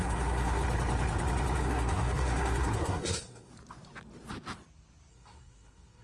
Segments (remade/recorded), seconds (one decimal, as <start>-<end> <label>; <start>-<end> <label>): 0.0-0.6 remade; 0.6-1.6 recorded; 1.6-3.5 remade; 3.5-5.1 recorded; 5.1-6.0 remade